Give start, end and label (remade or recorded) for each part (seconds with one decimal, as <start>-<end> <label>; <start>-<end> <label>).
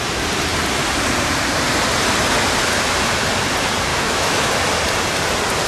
0.0-3.9 recorded; 3.9-4.5 remade; 4.5-5.7 recorded